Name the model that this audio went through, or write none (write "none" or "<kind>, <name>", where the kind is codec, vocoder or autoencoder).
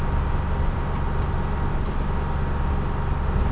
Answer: none